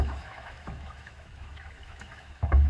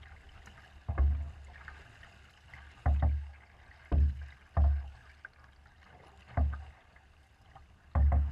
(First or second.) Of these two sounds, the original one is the second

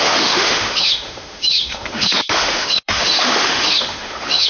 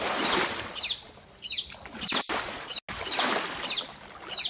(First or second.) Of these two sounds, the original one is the second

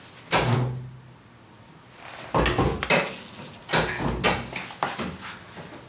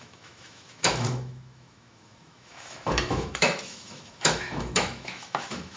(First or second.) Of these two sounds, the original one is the first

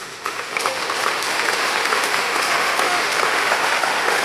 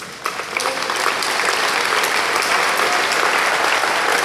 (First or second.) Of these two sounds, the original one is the second